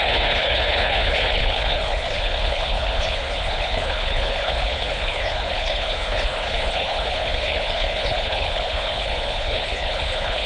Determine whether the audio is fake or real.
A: fake